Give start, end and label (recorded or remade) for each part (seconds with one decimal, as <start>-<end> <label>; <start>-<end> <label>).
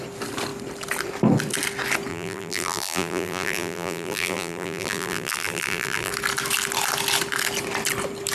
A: 0.0-2.1 recorded; 2.1-6.1 remade; 6.1-8.3 recorded